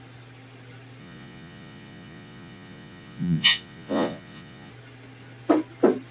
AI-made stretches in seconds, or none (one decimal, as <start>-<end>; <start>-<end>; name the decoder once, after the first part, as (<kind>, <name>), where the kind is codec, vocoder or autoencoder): 1.0-4.7 (vocoder, Vocos)